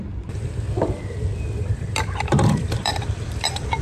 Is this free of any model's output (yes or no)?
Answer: no